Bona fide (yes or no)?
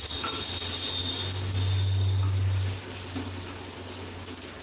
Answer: yes